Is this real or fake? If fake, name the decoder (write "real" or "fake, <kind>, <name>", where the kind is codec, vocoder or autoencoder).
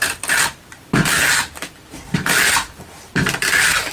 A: real